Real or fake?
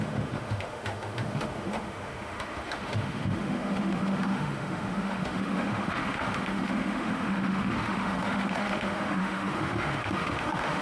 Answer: fake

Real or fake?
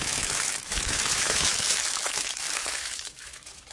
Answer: fake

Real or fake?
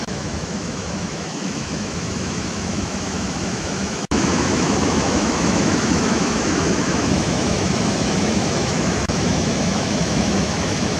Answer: fake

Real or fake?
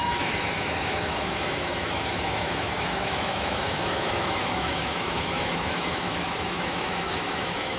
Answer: fake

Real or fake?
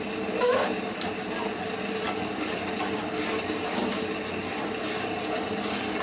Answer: real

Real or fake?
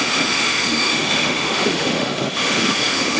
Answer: fake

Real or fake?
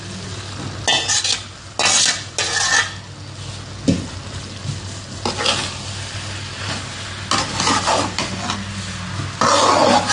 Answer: real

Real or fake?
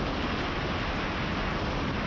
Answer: real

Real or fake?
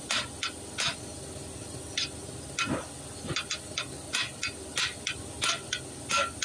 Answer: real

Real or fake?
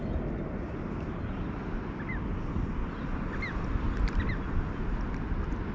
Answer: real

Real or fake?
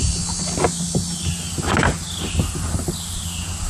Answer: real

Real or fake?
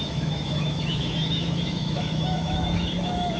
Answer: fake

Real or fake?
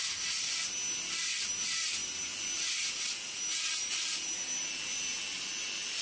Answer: real